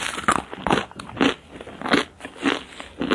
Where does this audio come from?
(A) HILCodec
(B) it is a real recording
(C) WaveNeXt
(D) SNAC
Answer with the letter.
B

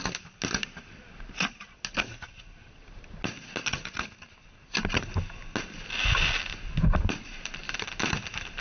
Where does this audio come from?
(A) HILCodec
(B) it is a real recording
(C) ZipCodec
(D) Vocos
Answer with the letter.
B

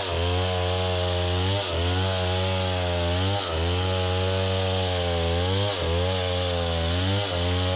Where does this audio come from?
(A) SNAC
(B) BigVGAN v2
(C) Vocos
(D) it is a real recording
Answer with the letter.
D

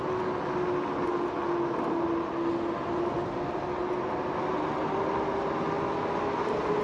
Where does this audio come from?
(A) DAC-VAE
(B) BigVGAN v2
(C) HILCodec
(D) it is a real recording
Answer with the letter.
D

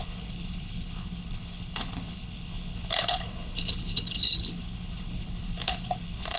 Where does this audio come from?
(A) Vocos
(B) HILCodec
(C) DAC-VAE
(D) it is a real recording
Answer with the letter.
B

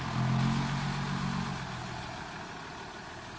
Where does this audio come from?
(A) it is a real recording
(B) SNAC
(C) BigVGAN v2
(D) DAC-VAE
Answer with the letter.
A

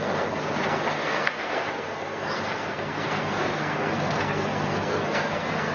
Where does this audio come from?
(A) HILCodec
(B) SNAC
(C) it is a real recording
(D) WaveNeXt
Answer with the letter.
B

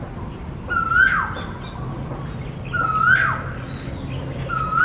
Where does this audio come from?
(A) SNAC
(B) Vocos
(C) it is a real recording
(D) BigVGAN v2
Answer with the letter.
C